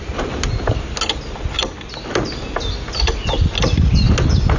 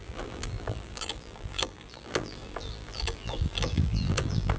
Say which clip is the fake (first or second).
second